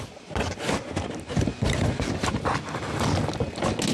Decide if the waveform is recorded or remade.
recorded